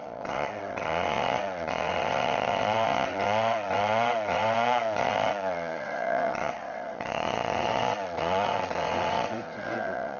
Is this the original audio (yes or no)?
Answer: no